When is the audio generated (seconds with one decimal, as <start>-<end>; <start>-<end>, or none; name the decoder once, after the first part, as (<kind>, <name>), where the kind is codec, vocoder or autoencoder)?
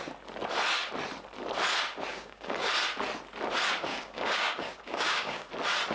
2.1-2.7 (codec, DAC); 3.9-5.5